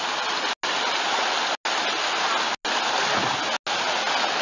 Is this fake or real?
real